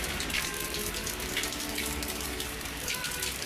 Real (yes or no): no